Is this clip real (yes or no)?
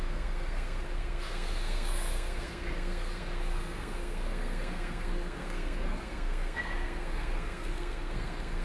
no